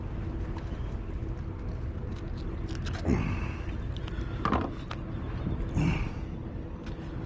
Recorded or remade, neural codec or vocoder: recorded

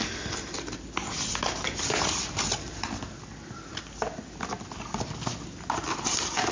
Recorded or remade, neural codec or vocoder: recorded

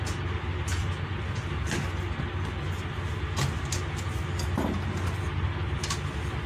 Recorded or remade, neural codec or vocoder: recorded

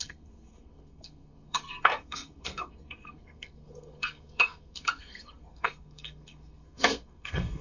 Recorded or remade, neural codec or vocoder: remade, codec, SNAC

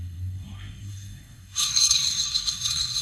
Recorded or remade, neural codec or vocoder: remade, codec, SNAC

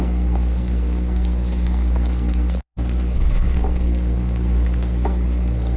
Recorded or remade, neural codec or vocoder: remade, codec, SNAC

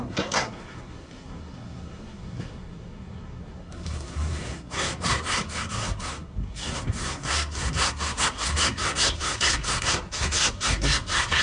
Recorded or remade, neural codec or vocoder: remade, codec, SNAC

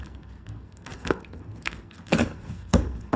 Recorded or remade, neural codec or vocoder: remade, codec, SNAC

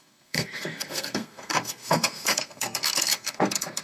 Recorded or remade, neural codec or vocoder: remade, codec, SNAC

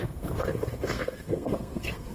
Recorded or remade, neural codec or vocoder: remade, codec, SNAC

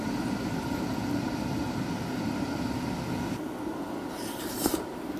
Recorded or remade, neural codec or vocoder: recorded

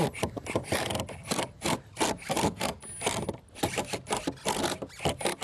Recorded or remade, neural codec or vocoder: recorded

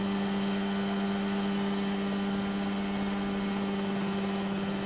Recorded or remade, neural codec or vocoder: recorded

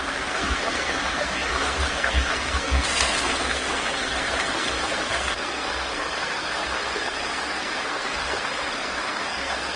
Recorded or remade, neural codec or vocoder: remade, codec, SNAC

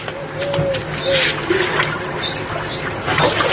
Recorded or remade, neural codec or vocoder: recorded